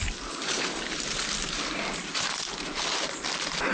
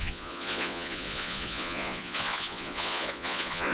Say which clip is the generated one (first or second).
second